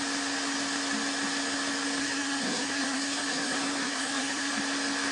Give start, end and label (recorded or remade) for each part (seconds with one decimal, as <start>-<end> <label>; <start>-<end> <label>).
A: 0.0-2.0 recorded; 2.0-4.5 remade; 4.5-5.1 recorded